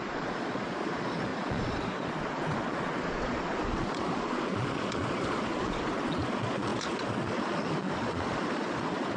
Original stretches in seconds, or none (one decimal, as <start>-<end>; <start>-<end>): none